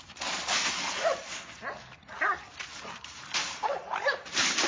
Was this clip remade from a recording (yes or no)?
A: no